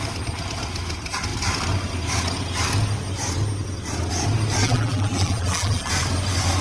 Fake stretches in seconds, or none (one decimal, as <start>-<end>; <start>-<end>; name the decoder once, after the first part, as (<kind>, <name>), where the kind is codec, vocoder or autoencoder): 4.6-5.9 (vocoder, BigVGAN v2)